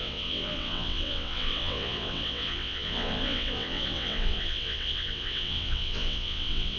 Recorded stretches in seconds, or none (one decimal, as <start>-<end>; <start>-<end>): none